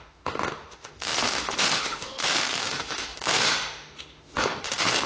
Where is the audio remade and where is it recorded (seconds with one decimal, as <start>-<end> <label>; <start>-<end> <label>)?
0.0-5.1 remade